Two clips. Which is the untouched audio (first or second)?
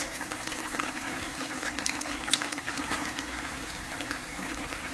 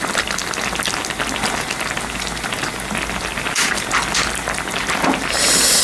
second